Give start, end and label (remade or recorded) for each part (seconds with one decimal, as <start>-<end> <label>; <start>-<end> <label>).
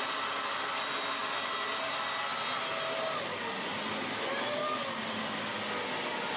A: 0.0-6.4 recorded